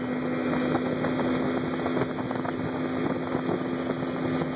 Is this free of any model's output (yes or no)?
yes